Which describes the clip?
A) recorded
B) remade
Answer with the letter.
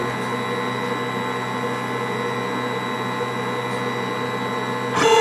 A